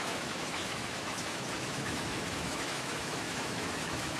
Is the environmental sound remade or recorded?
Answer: remade